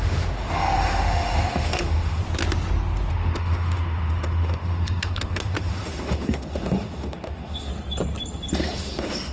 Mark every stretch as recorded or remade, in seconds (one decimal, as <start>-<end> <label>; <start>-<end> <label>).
0.0-2.2 remade; 2.2-3.1 recorded; 3.1-7.7 remade; 7.7-8.5 recorded; 8.5-9.3 remade